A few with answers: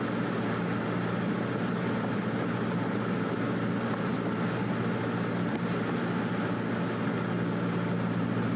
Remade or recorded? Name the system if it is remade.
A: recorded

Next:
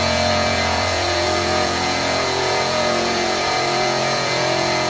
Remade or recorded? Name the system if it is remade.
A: remade, vocoder, Vocos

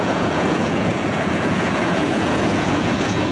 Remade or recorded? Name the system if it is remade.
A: remade, vocoder, Vocos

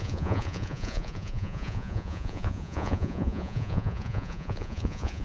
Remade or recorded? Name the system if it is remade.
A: remade, vocoder, Vocos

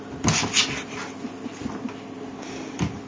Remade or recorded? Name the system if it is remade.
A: recorded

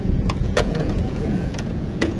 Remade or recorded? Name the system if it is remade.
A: remade, vocoder, Vocos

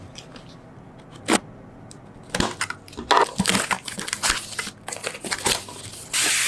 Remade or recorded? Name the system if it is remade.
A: recorded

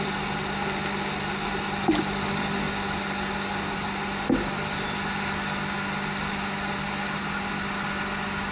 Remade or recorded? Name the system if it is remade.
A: recorded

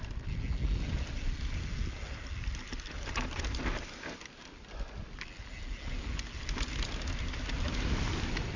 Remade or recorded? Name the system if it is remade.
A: recorded